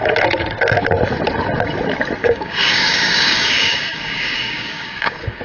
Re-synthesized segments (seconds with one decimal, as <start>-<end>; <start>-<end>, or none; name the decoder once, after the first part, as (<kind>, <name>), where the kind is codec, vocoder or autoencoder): 2.2-5.4 (codec, DAC)